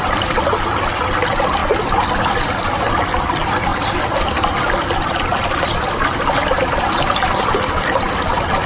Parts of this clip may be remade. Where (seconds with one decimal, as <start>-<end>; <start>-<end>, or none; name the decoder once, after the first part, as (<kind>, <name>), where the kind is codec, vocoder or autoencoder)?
none